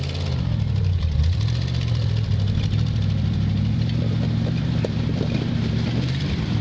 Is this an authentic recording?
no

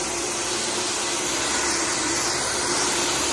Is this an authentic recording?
yes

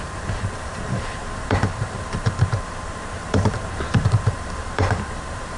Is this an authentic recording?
no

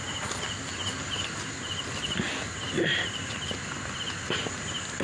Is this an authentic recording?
yes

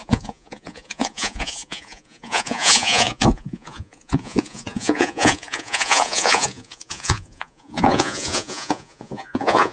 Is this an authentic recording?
no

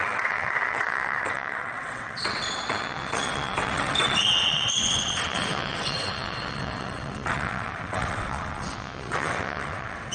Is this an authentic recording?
no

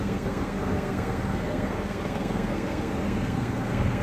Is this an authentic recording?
no